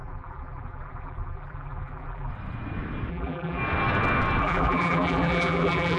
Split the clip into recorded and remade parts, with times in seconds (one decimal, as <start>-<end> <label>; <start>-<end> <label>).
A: 0.0-2.3 remade; 2.3-3.1 recorded; 3.1-3.6 remade; 3.6-4.4 recorded; 4.4-6.0 remade